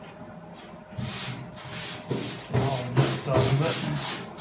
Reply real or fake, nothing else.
real